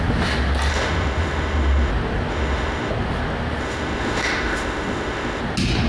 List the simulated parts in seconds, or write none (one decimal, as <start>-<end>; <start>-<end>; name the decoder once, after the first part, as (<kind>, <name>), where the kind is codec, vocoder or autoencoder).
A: 0.7-1.9 (autoencoder, DAC-VAE); 2.3-2.9; 3.6-5.4